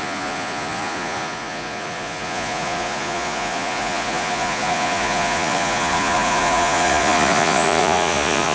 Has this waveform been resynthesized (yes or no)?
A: yes